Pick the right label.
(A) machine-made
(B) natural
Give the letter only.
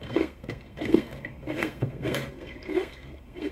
A